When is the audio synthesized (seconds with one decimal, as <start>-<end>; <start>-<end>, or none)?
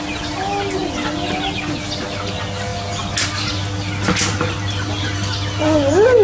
none